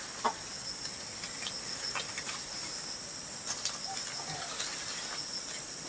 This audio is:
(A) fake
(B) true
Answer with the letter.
B